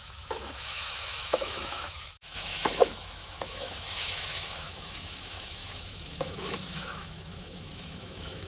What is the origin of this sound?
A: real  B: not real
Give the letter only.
B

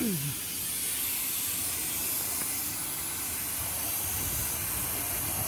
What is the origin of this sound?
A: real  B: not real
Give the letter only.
A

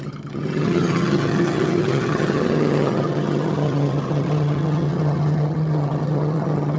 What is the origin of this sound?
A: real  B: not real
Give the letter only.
B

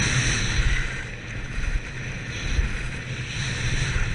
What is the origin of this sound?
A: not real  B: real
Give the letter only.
B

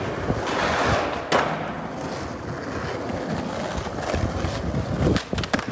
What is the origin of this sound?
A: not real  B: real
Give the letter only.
B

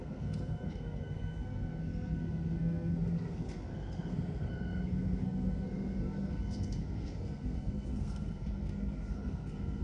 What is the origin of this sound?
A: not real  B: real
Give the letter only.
A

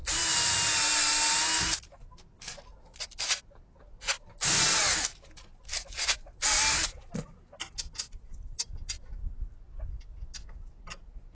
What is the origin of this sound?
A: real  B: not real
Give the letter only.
A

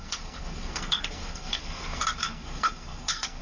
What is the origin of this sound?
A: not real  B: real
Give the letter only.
A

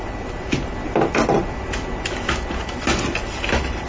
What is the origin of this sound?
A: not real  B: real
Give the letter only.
B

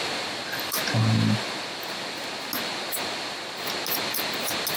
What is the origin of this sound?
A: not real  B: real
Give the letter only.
B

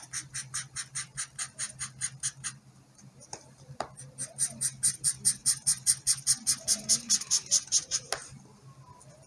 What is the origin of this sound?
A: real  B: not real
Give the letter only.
A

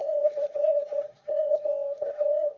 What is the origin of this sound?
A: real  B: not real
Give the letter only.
B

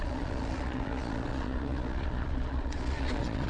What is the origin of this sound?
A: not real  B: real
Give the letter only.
A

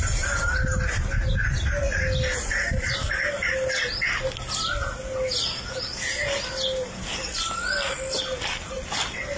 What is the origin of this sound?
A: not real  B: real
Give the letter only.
B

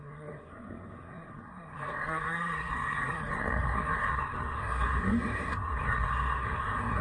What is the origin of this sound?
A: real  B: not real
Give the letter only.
B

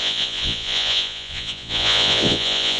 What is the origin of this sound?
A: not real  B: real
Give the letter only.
A